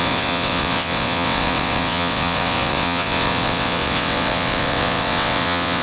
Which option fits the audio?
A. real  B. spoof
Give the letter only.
B